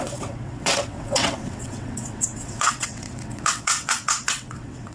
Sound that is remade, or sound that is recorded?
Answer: remade